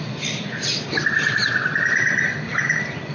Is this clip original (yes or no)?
no